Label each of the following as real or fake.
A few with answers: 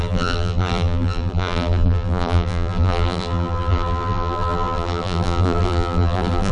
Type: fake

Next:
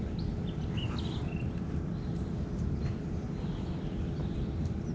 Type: real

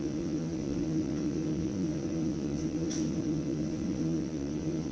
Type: fake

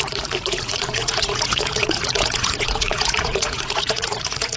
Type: fake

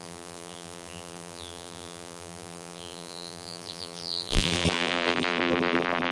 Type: fake